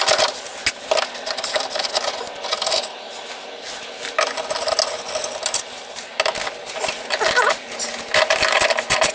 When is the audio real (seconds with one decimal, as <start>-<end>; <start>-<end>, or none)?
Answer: 0.0-9.1